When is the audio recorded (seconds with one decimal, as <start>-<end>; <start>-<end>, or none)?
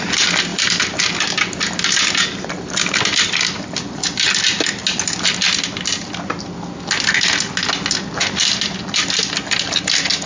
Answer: 0.0-10.3